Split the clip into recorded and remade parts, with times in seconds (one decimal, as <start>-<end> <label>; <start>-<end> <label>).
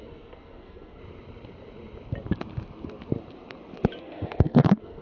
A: 0.0-1.0 remade; 1.0-4.0 recorded; 4.0-5.0 remade